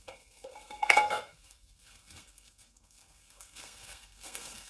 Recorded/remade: remade